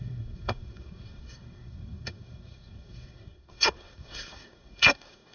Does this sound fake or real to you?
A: fake